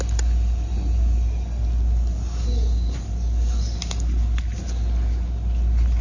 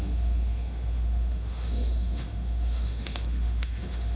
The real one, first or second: first